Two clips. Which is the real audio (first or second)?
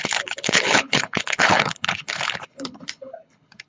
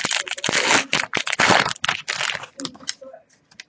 second